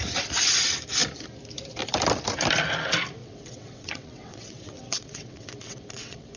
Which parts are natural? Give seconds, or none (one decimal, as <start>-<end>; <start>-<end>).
0.0-3.2